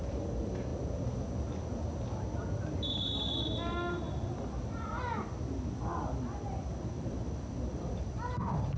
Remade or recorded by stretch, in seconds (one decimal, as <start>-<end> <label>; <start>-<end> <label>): 0.0-0.7 remade; 0.7-5.8 recorded; 5.8-8.8 remade